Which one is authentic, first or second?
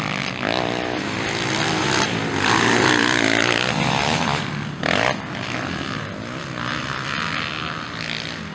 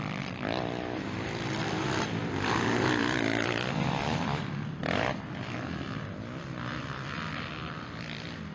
first